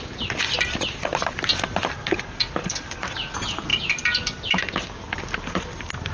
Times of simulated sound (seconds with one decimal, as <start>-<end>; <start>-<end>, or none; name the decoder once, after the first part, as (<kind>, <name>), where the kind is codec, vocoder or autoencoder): 3.7-4.8 (vocoder, BigVGAN v2)